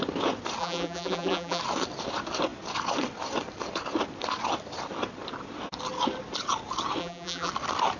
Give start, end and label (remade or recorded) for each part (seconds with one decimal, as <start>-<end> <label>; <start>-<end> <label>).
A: 0.0-0.6 recorded; 0.6-1.6 remade; 1.6-7.0 recorded; 7.0-7.5 remade; 7.5-8.0 recorded